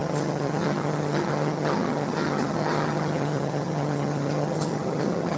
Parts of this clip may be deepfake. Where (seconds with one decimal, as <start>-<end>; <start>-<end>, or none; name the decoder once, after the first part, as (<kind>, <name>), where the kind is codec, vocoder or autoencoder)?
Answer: 0.0-5.4 (vocoder, HiFi-GAN)